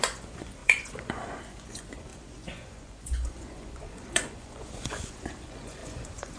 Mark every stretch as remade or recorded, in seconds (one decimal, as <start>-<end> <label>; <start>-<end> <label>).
0.0-6.4 remade